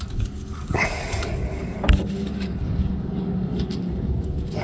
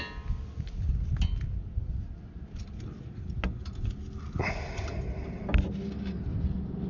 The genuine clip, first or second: second